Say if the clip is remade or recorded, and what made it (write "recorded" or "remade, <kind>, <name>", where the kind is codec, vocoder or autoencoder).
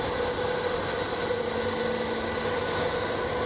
recorded